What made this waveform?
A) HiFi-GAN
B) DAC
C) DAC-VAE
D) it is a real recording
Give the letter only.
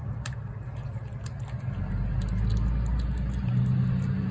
D